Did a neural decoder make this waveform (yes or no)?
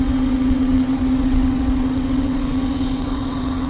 yes